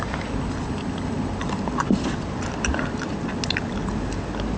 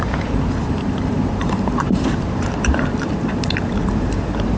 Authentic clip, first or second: first